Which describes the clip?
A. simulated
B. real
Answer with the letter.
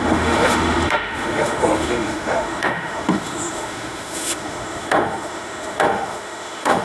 A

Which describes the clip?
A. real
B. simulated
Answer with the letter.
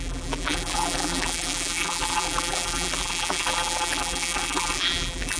B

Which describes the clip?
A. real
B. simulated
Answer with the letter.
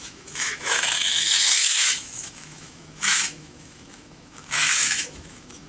B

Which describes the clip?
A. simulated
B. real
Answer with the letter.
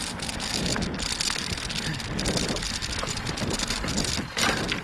B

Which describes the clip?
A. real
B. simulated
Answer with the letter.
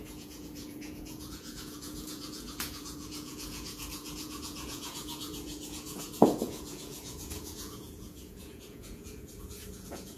B